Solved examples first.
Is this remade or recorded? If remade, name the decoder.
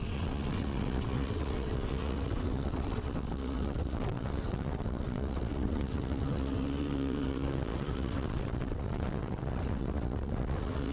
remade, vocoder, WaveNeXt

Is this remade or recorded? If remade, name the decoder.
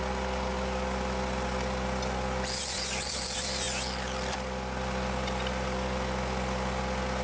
recorded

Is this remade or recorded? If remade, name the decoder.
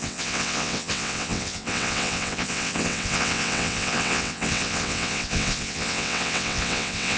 remade, vocoder, WaveNeXt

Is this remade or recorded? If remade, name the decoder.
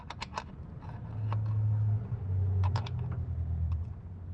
recorded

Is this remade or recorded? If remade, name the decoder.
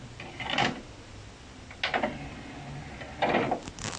recorded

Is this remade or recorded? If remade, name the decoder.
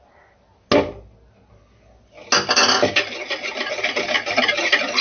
recorded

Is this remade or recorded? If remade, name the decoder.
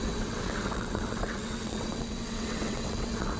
remade, vocoder, WaveNeXt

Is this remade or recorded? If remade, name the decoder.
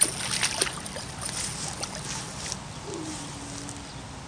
recorded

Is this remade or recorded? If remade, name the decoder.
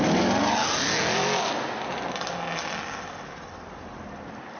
recorded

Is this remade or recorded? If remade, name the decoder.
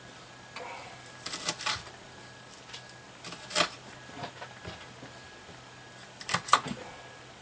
recorded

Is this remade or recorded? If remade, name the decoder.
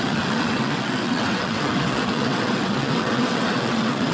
remade, vocoder, WaveNeXt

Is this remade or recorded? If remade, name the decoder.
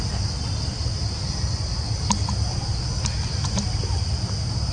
recorded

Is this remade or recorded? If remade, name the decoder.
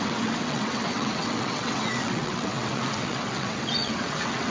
remade, vocoder, WaveNeXt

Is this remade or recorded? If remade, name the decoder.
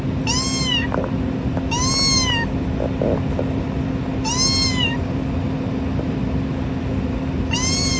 recorded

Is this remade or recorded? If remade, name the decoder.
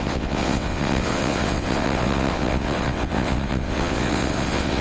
remade, vocoder, WaveNeXt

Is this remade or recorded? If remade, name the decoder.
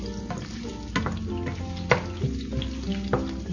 recorded